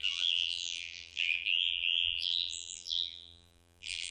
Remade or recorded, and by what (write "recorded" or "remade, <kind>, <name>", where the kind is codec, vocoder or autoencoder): remade, vocoder, BigVGAN v2